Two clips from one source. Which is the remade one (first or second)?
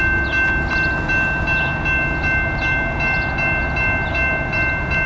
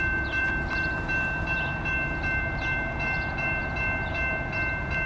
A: second